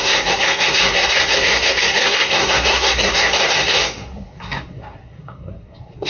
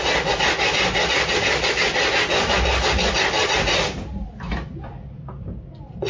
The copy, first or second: first